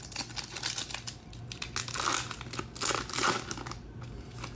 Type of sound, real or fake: real